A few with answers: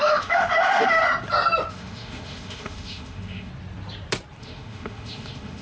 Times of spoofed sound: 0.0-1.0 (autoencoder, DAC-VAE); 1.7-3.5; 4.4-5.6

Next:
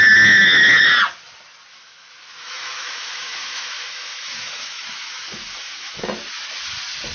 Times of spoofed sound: 1.7-6.0 (autoencoder, DAC-VAE)

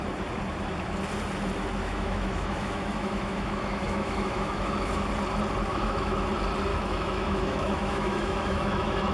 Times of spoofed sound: 1.8-5.1 (autoencoder, DAC-VAE); 5.7-6.3; 6.7-9.1

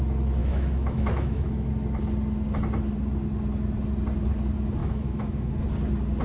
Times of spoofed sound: 0.4-1.7 (autoencoder, DAC-VAE); 4.8-5.5

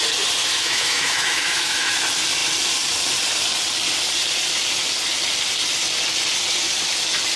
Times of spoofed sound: 0.4-1.9 (autoencoder, DAC-VAE)